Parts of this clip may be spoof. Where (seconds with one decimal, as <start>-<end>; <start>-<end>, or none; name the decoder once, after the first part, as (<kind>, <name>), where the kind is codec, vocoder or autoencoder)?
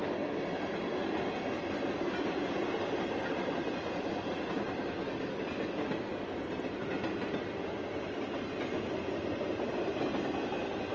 none